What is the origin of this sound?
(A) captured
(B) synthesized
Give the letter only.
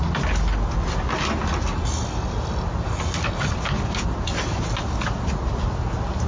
A